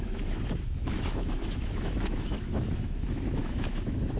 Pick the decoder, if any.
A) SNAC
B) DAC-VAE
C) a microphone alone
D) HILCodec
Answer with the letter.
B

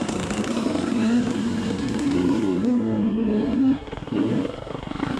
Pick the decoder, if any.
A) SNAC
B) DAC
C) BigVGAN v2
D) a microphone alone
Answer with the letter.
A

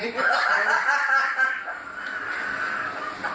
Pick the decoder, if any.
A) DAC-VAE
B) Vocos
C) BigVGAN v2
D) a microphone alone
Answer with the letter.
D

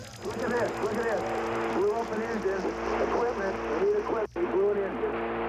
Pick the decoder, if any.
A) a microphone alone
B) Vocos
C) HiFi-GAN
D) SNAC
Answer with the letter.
A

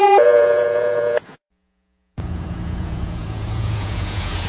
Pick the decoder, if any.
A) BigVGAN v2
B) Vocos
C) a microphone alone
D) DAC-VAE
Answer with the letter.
B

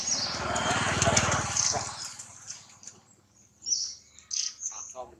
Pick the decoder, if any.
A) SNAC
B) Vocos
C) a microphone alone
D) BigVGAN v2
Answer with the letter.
C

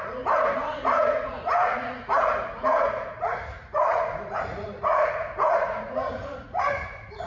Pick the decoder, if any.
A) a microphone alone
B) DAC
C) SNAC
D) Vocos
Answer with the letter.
D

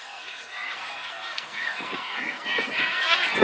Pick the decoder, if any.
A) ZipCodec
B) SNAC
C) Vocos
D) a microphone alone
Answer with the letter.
B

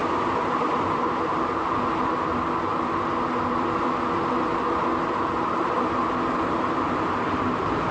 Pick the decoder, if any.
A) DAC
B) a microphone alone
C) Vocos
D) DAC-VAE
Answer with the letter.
B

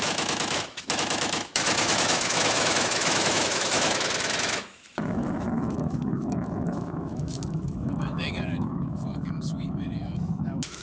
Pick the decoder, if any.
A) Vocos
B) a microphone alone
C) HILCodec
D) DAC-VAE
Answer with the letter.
D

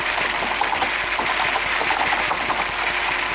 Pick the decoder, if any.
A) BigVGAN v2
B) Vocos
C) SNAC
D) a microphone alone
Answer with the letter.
D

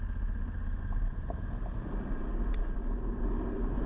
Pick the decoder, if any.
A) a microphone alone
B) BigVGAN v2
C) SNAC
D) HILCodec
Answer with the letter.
A